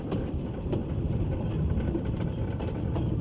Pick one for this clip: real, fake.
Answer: fake